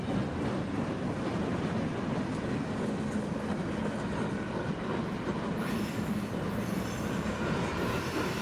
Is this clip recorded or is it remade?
recorded